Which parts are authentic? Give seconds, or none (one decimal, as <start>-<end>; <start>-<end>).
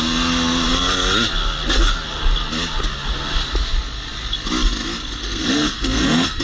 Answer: 0.0-5.2